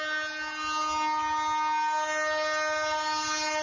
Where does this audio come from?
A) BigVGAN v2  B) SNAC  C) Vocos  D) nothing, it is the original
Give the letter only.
D